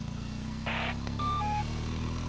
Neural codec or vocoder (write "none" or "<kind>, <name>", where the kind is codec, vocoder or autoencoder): codec, SNAC